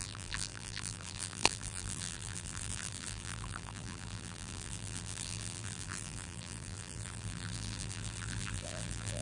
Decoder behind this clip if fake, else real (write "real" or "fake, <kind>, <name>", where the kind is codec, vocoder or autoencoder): fake, vocoder, BigVGAN v2